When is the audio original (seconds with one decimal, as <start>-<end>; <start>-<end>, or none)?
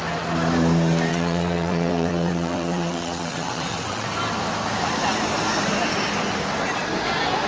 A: 0.0-1.1; 4.1-7.5